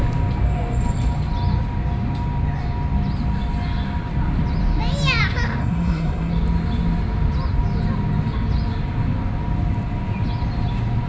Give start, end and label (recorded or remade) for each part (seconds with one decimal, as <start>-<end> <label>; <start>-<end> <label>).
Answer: 0.0-5.6 recorded; 5.6-6.3 remade; 6.3-11.1 recorded